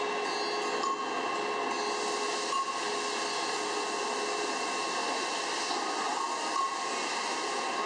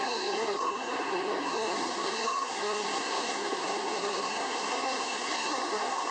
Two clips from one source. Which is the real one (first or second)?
first